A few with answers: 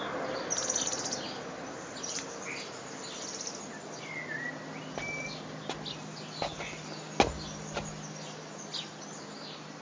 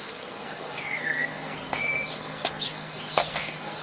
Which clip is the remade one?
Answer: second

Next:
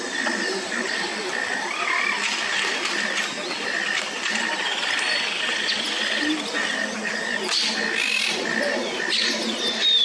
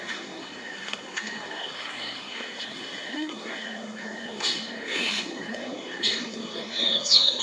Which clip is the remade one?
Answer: second